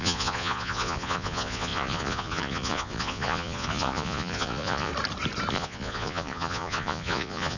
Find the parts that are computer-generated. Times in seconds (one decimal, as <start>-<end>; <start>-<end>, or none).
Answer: 0.0-4.9; 5.5-7.6